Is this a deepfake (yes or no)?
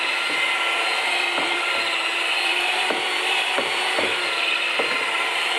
yes